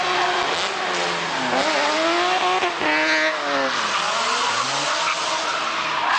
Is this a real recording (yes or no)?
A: yes